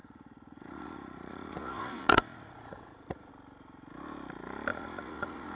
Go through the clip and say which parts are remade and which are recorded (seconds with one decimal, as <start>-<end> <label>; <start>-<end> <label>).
0.0-3.3 remade; 3.3-4.7 recorded; 4.7-5.5 remade